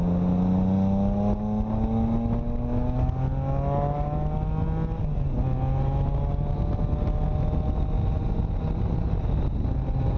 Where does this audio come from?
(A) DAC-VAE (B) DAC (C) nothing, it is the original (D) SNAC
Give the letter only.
C